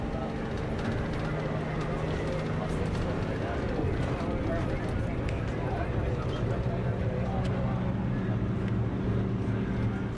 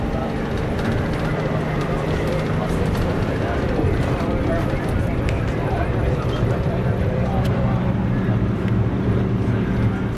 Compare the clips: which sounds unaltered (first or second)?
first